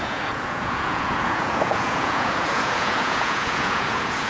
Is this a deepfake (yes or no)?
yes